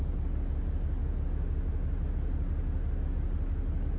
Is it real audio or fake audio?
real